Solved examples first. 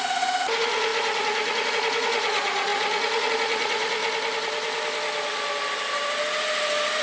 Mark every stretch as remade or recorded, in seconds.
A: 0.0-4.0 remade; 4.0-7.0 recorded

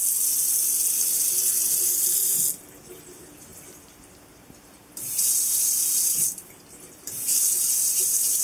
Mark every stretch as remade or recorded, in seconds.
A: 0.0-3.5 recorded; 3.5-8.4 remade

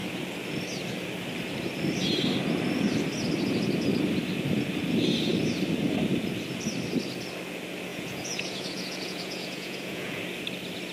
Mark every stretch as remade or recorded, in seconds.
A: 0.0-7.9 recorded; 7.9-10.2 remade; 10.2-10.9 recorded